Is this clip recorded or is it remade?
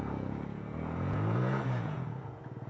remade